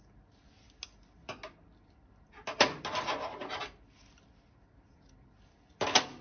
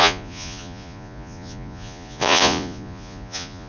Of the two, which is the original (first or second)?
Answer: first